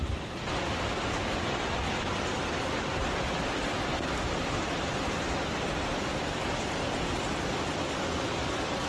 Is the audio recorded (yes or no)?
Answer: yes